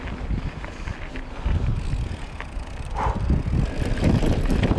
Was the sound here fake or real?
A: real